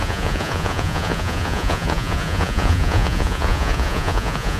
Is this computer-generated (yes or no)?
yes